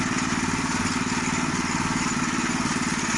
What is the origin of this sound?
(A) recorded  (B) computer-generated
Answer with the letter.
A